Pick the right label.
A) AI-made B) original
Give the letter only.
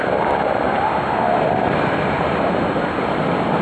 B